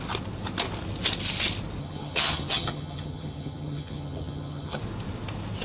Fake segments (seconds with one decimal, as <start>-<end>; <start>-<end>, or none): 1.8-4.8